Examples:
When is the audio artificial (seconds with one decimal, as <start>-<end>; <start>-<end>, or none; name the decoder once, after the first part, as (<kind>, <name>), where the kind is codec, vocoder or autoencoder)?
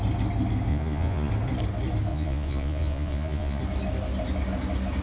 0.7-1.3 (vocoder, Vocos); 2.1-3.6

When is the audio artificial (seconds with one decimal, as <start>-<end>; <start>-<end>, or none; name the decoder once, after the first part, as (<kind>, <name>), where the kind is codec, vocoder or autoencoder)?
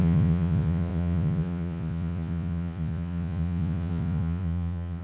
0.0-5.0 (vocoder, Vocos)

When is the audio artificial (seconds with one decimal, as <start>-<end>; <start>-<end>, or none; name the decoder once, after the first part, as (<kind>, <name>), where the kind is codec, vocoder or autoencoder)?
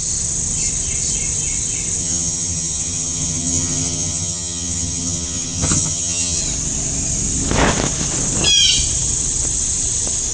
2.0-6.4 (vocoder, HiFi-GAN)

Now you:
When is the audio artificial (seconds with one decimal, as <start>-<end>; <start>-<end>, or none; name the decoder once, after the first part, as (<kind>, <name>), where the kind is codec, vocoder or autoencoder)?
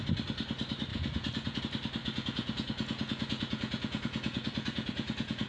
0.9-1.6 (vocoder, Vocos); 2.0-5.5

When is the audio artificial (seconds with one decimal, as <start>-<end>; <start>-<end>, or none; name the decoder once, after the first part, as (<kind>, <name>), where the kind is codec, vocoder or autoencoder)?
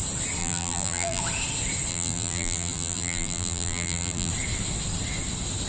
0.4-1.2 (vocoder, BigVGAN v2); 1.9-4.3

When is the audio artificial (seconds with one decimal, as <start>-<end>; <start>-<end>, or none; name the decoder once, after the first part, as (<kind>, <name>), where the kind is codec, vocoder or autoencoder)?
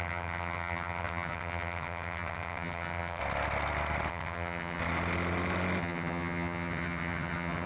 0.0-3.2 (vocoder, HiFi-GAN); 4.1-4.8; 5.8-7.7